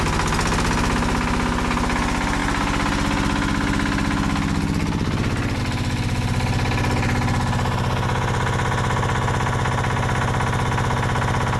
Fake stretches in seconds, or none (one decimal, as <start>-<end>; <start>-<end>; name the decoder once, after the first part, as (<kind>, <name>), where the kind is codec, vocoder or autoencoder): none